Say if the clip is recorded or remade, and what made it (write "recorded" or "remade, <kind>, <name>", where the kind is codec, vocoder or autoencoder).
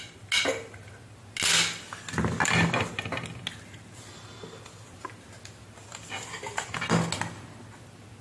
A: recorded